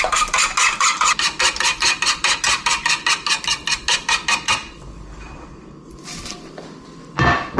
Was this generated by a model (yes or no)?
no